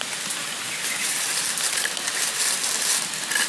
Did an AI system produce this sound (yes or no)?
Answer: no